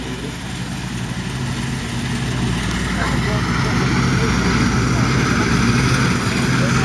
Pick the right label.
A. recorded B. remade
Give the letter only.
A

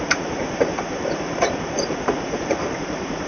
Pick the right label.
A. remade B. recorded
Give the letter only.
A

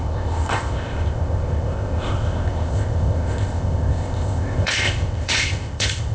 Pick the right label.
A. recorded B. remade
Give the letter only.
B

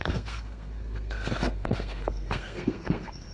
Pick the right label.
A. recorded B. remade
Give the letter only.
B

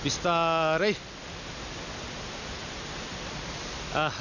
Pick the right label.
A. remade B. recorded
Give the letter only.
B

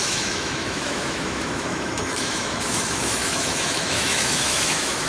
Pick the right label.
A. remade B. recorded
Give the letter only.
A